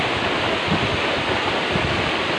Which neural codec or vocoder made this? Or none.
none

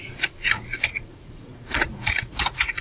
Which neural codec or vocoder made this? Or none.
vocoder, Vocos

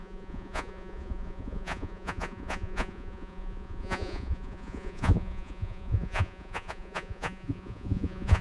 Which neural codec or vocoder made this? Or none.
vocoder, Vocos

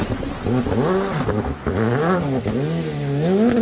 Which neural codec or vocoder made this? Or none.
none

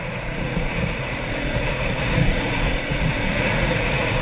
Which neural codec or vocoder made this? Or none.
vocoder, Vocos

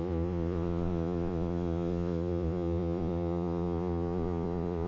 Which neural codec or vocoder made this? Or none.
vocoder, Vocos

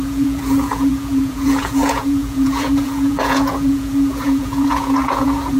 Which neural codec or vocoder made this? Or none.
vocoder, Vocos